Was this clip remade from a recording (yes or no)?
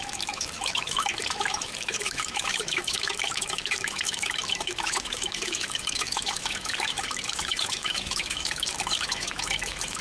yes